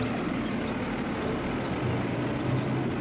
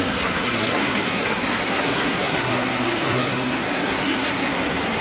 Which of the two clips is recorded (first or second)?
first